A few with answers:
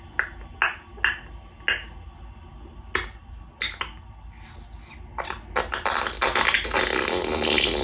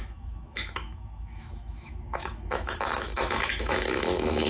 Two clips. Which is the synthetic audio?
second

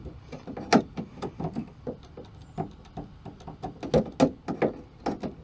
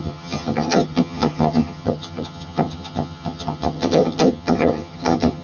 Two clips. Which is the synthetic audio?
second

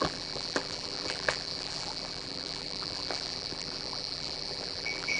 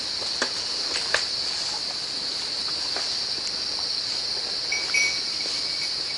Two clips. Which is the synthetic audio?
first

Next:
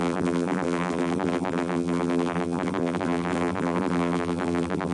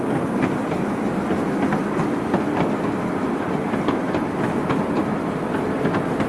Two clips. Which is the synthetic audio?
first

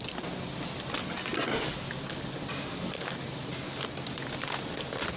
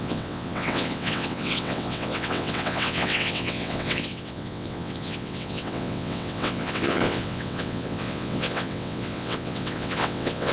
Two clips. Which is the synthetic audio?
second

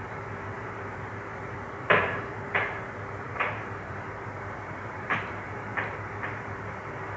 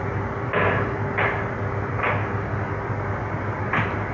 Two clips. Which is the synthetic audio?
first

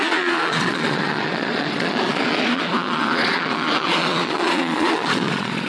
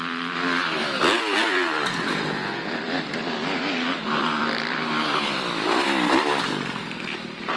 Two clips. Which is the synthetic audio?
first